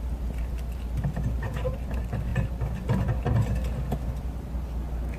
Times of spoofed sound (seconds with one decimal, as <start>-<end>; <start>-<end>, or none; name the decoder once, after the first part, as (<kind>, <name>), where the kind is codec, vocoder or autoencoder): none

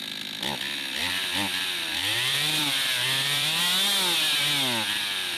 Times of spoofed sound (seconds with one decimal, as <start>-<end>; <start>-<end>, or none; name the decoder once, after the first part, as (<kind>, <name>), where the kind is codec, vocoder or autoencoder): 2.0-3.6 (vocoder, BigVGAN v2)

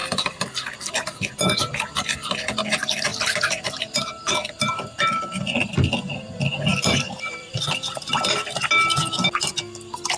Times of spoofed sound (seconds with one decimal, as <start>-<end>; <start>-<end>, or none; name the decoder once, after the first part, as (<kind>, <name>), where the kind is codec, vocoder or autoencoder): 3.1-3.8 (vocoder, BigVGAN v2); 6.7-7.5

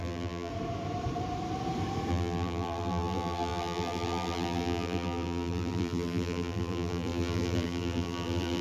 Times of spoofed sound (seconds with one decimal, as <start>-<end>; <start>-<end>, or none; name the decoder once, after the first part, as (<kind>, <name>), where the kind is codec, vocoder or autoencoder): 0.0-0.5 (vocoder, BigVGAN v2); 2.1-8.6

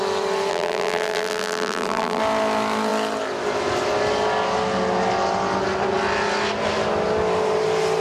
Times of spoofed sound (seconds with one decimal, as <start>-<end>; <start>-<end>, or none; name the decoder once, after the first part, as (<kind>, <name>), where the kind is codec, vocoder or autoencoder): 0.5-2.2 (vocoder, BigVGAN v2)

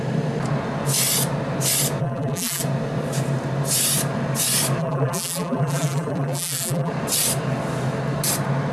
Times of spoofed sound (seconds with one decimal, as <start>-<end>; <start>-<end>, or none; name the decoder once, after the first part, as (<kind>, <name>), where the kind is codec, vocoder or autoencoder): 2.0-2.6 (vocoder, BigVGAN v2); 4.8-6.9

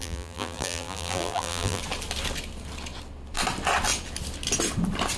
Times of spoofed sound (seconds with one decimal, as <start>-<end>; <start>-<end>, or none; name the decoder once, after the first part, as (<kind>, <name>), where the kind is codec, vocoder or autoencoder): 0.0-1.8 (vocoder, BigVGAN v2)